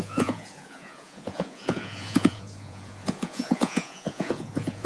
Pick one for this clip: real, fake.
fake